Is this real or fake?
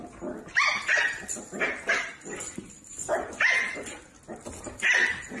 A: real